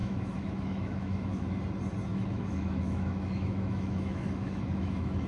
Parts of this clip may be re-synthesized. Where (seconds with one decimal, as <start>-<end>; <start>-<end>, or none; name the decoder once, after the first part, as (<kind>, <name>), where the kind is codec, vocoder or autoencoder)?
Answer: 0.0-1.6 (autoencoder, DAC-VAE); 2.1-5.3